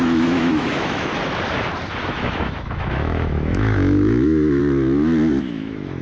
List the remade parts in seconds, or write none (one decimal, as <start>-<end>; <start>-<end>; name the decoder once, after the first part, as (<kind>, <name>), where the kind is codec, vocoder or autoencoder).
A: 0.0-1.1 (autoencoder, DAC-VAE); 2.1-4.6; 5.4-6.0